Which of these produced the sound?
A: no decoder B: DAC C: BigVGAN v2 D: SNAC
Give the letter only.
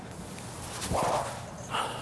A